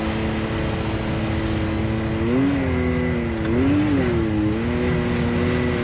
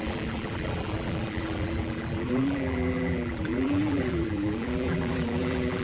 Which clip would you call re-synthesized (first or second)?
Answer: second